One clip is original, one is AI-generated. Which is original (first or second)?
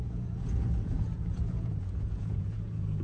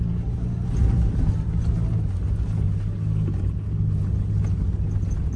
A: second